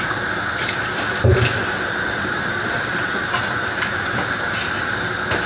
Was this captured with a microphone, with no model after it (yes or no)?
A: yes